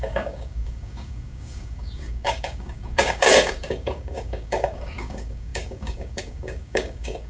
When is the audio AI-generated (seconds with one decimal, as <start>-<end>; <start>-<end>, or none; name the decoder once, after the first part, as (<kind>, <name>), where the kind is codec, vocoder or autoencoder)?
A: 0.0-7.3 (codec, DAC)